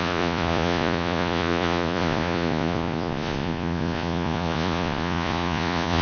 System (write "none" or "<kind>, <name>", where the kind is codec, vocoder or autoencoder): vocoder, Vocos